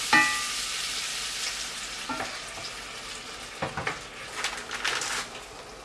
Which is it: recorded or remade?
recorded